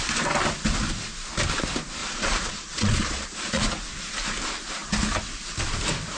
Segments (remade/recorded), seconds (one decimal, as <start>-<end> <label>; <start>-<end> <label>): 0.0-2.0 recorded; 2.0-3.6 remade; 3.6-6.2 recorded